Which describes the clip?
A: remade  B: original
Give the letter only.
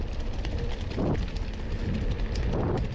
B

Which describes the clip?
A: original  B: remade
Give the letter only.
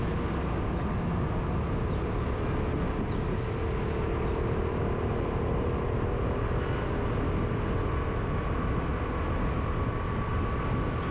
A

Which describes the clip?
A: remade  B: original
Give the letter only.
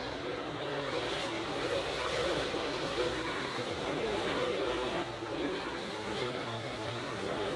A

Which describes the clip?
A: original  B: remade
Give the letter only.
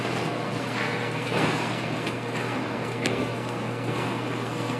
B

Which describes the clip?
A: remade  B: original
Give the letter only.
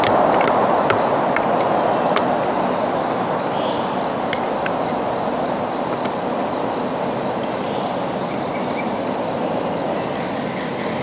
B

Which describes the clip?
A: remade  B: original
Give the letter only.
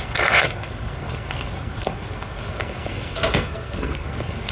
A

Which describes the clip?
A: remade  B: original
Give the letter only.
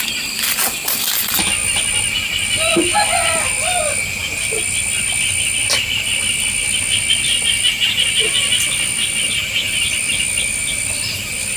B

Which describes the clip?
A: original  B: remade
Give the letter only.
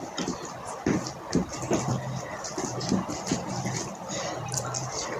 A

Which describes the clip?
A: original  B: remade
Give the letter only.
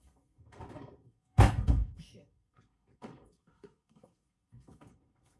B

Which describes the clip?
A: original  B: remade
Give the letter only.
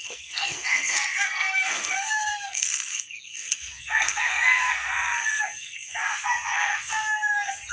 B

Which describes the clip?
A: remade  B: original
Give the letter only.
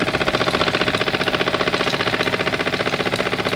B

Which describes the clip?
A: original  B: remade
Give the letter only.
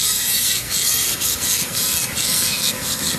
B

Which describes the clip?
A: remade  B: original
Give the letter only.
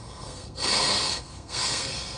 A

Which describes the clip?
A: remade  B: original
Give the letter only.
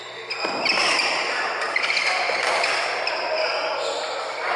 B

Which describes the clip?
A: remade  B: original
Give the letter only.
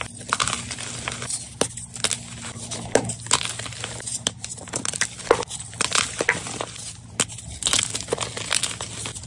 B